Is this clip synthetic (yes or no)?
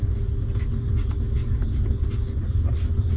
no